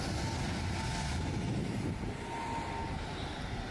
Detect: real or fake real